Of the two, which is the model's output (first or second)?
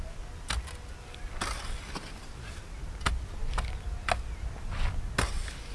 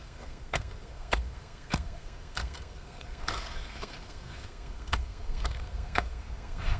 second